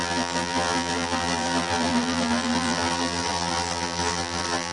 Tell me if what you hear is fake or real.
fake